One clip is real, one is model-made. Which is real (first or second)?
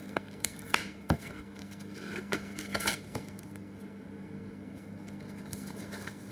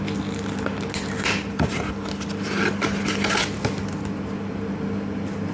second